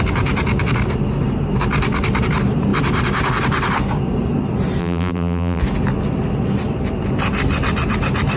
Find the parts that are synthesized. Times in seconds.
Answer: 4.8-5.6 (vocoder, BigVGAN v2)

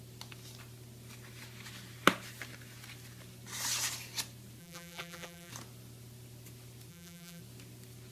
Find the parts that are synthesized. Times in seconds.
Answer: 4.6-5.5 (vocoder, BigVGAN v2); 6.9-7.4

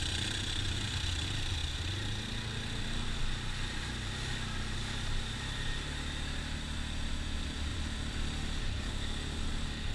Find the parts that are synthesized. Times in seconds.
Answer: 7.7-8.9 (vocoder, BigVGAN v2)

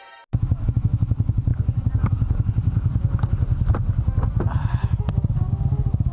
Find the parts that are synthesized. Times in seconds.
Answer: none

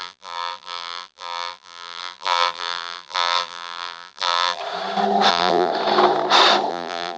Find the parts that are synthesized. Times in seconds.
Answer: 0.0-4.6 (vocoder, BigVGAN v2); 5.3-5.7; 6.7-7.2

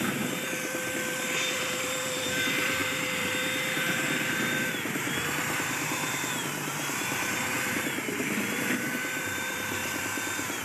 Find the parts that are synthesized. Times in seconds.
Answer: 0.0-9.8 (vocoder, BigVGAN v2)